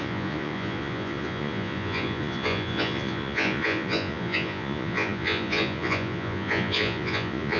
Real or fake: fake